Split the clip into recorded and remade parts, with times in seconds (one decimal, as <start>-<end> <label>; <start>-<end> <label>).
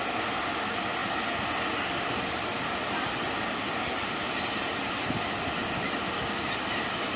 0.0-7.2 recorded